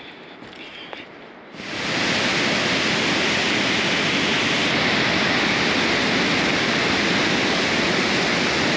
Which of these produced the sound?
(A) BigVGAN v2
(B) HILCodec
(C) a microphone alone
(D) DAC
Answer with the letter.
C